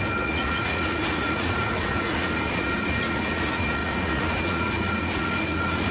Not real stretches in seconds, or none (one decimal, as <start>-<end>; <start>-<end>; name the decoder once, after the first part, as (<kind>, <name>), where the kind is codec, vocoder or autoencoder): 0.0-5.9 (vocoder, Vocos)